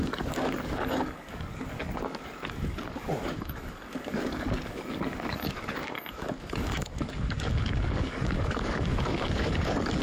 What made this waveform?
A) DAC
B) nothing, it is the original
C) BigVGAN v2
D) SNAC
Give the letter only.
A